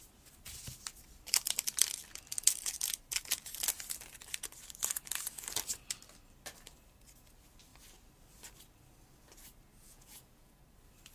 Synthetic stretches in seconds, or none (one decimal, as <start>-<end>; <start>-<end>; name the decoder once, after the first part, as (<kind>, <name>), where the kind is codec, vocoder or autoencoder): 9.8-10.6 (vocoder, Vocos)